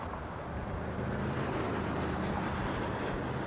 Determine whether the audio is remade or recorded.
recorded